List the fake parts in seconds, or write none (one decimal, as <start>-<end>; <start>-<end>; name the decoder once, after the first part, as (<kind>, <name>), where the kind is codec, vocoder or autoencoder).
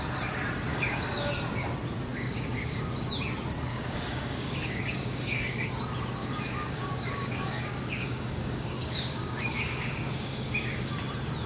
0.7-1.3 (codec, DAC); 2.1-2.8; 3.7-5.7; 6.2-10.9